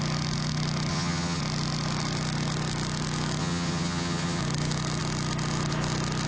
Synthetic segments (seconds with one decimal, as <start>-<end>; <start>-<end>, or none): 0.9-1.4; 3.4-4.4